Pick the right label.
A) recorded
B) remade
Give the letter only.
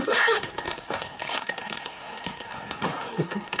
B